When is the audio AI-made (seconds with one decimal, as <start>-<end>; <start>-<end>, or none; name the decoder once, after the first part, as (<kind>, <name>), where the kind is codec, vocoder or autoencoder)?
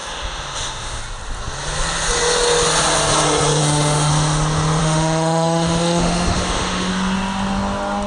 0.0-1.0 (autoencoder, DAC-VAE); 3.6-4.1; 4.8-6.9